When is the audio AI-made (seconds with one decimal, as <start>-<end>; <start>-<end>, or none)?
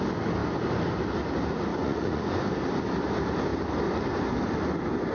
1.7-2.4